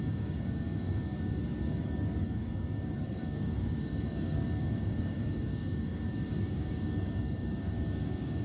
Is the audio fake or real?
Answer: fake